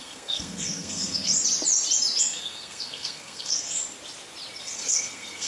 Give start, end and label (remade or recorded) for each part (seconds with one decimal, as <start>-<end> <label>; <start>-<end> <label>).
0.0-1.3 remade; 1.3-2.2 recorded; 2.2-3.8 remade; 3.8-4.6 recorded; 4.6-5.5 remade